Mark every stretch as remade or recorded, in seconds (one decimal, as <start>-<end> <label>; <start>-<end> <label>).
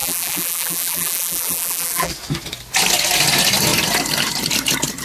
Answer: 0.0-2.1 remade; 2.1-5.0 recorded